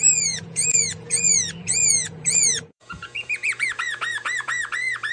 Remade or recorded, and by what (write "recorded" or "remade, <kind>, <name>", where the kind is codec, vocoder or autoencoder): remade, vocoder, Vocos